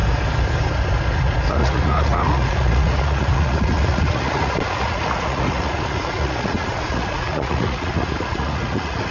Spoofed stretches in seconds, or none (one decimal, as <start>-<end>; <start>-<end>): 1.5-9.1